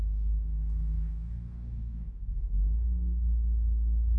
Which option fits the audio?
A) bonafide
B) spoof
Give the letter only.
B